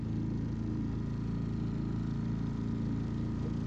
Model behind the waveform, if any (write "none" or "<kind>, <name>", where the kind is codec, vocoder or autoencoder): none